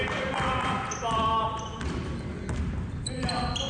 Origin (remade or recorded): recorded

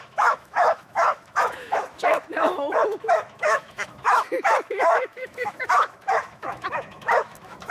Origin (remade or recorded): remade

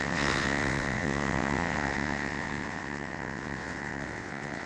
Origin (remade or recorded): remade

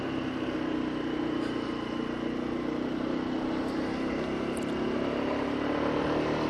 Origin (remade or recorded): recorded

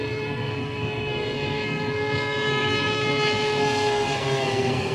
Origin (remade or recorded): remade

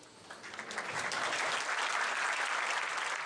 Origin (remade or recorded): recorded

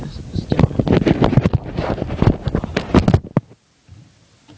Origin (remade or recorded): recorded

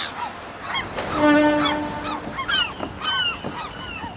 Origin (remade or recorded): recorded